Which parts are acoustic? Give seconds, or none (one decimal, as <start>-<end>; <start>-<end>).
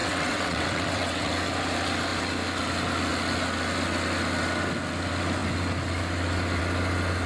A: 1.3-7.3